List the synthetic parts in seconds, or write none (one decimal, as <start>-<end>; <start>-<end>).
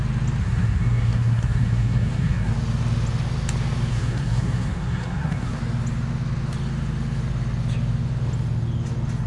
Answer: 0.4-2.5; 3.9-5.6